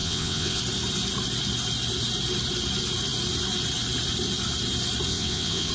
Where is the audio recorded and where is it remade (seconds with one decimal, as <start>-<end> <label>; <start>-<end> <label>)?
0.0-0.6 remade; 0.6-5.1 recorded; 5.1-5.7 remade